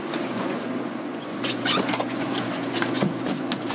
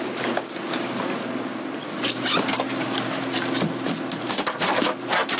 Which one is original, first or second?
second